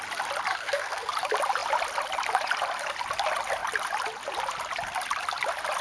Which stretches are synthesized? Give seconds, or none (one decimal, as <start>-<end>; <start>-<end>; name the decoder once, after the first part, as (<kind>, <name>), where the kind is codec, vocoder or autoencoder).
0.5-1.1 (codec, SNAC)